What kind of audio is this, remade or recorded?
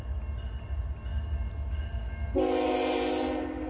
recorded